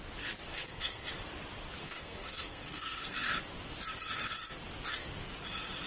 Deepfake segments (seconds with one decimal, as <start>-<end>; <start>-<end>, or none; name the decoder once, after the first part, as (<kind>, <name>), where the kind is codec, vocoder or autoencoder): 0.5-1.1 (codec, SNAC); 1.8-3.4